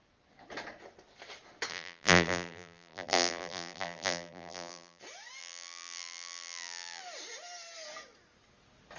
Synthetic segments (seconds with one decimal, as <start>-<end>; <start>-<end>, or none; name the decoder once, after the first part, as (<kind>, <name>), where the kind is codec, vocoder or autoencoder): 1.7-5.0 (vocoder, BigVGAN v2); 5.4-7.0